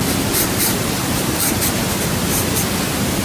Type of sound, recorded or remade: remade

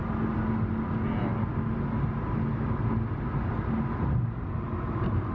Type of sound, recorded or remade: recorded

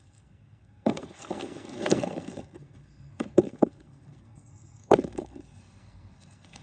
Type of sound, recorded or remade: remade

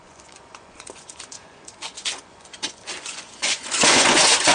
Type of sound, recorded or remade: remade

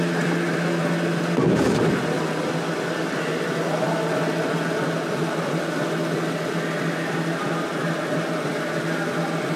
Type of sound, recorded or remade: recorded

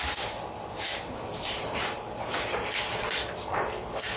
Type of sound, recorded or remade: recorded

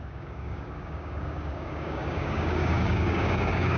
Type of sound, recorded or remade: remade